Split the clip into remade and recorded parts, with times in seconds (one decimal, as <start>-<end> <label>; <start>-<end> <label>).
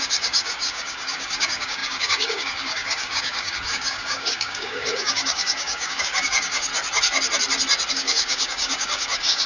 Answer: 0.0-6.7 remade; 6.7-7.9 recorded; 7.9-9.5 remade